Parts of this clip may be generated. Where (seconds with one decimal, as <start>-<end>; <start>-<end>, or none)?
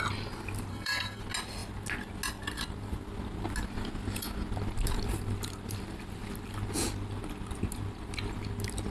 0.7-1.2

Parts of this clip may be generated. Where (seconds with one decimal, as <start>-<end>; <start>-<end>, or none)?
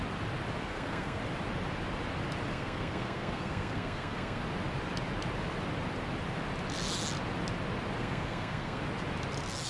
0.6-1.2; 2.5-4.4; 8.0-8.8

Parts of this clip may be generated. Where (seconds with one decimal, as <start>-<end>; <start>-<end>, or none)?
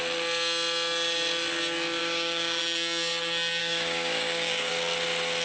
2.0-2.6; 3.6-4.7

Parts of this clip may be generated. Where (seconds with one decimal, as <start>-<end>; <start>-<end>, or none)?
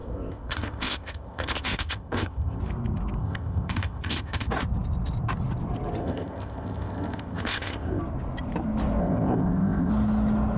0.0-2.6; 3.2-4.5; 6.0-8.0; 9.0-9.9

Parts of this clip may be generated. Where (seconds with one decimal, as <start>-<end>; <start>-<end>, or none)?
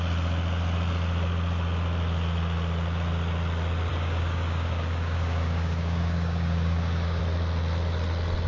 3.9-7.2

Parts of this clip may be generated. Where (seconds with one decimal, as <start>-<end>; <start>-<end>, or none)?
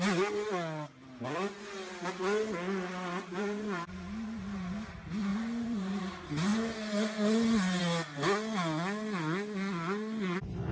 3.3-3.9; 5.3-6.0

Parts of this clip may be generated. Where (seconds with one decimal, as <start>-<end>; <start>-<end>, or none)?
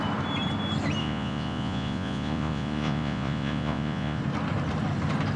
1.0-4.2